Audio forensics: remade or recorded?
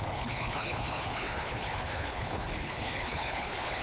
remade